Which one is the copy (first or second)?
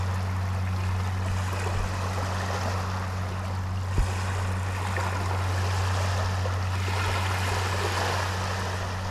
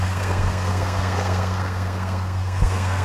second